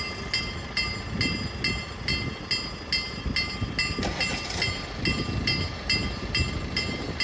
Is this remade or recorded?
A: recorded